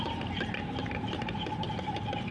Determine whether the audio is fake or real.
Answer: real